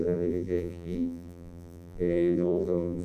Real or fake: fake